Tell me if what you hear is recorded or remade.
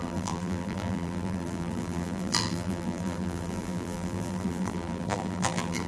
remade